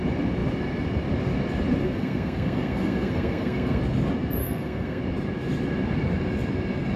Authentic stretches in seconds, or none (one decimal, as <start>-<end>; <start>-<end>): 0.0-1.8; 3.8-4.4; 5.0-7.0